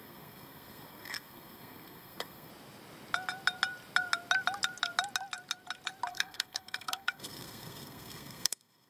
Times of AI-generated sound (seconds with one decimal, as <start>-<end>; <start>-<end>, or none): 0.0-2.5; 6.1-8.9